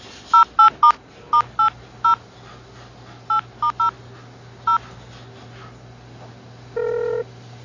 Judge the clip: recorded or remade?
recorded